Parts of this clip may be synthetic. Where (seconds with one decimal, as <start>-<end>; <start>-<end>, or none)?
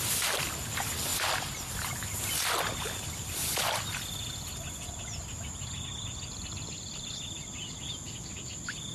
none